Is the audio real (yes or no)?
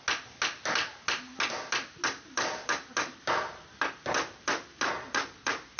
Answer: yes